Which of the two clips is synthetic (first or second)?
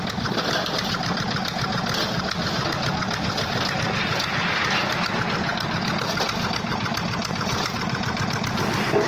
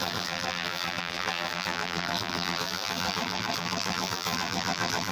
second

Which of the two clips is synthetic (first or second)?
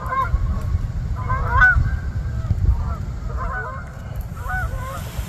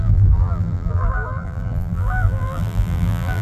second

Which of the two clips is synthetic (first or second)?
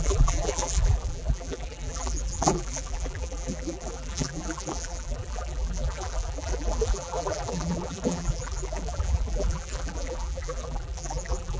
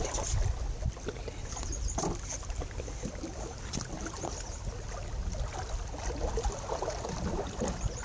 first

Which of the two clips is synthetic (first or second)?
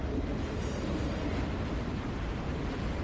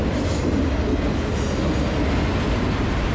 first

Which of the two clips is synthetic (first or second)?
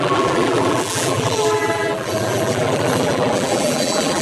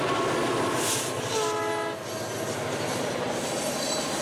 first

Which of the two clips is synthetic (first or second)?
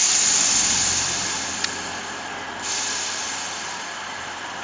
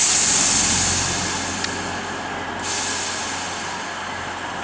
first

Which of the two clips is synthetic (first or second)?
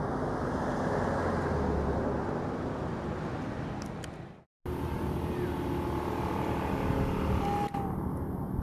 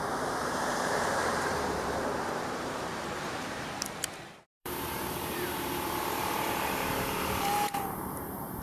second